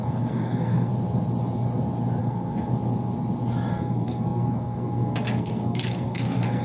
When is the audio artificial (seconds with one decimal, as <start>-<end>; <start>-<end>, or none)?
0.0-0.9; 2.2-2.7; 3.7-6.6